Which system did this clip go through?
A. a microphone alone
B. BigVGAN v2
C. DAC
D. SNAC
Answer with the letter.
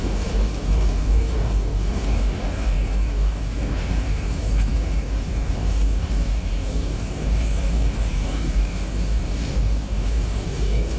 C